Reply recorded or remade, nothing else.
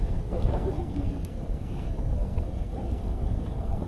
remade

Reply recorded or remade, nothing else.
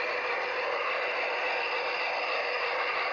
recorded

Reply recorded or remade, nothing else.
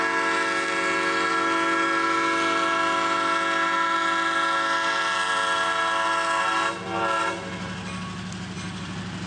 recorded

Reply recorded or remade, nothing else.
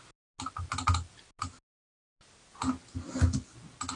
recorded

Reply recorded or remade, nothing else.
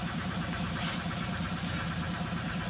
remade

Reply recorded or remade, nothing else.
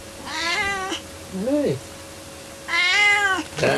recorded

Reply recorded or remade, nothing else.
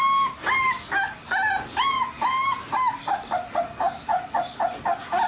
recorded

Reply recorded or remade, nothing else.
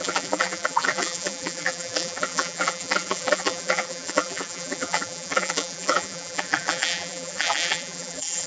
remade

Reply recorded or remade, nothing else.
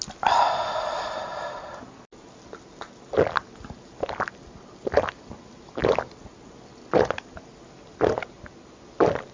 recorded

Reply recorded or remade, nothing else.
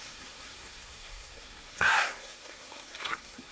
remade